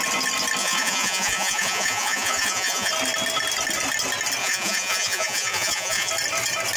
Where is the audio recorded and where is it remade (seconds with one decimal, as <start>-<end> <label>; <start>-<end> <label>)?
0.0-0.6 recorded; 0.6-2.9 remade; 2.9-4.4 recorded; 4.4-6.1 remade; 6.1-6.8 recorded